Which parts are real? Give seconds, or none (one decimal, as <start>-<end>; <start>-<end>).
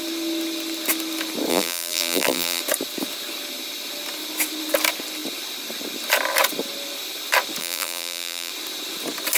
0.0-1.5; 2.6-7.6; 8.5-9.4